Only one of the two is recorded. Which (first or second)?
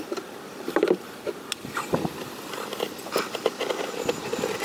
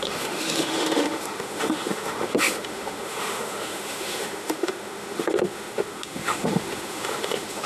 first